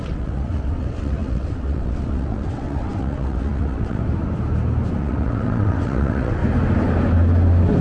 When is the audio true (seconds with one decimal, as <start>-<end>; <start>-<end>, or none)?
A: 4.0-5.0; 6.4-7.8